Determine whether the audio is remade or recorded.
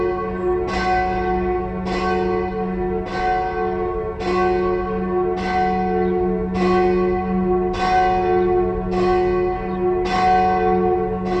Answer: recorded